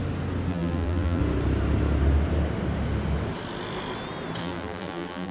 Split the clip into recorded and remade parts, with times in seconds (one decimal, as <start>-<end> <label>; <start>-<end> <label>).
0.0-0.5 recorded; 0.5-1.2 remade; 1.2-4.4 recorded; 4.4-5.3 remade